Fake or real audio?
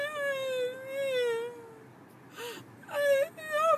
real